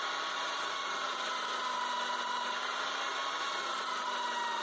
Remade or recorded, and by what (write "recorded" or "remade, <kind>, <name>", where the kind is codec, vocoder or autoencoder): recorded